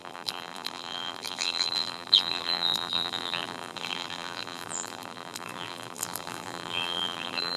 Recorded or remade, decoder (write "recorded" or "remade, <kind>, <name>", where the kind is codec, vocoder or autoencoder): remade, vocoder, BigVGAN v2